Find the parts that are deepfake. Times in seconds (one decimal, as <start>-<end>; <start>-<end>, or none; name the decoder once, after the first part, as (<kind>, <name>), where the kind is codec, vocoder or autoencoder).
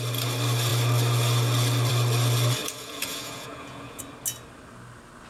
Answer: 2.6-4.0 (vocoder, Vocos)